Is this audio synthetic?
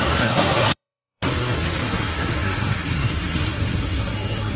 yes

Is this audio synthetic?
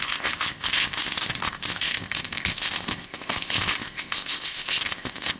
yes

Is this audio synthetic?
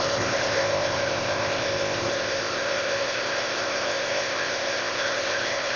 yes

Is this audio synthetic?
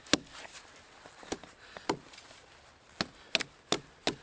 no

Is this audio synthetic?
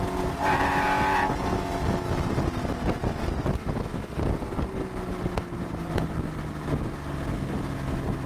no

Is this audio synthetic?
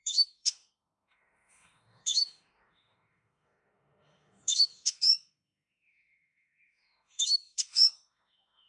yes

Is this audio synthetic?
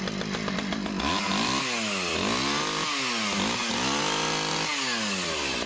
no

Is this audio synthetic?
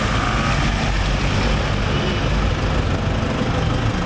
no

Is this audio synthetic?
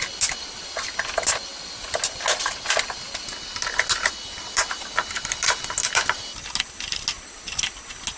no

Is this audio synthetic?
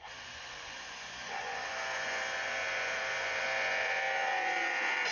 yes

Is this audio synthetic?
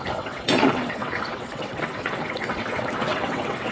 yes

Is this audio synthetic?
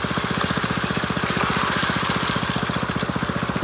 no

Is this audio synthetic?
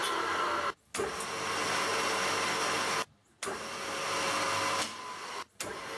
no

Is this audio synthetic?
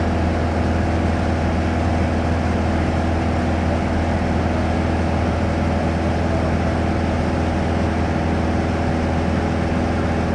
no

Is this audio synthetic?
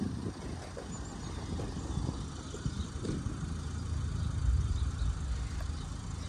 no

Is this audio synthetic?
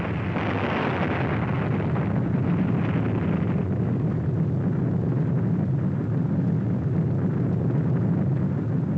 no